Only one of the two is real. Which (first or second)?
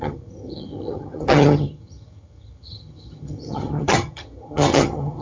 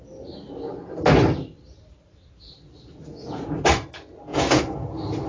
second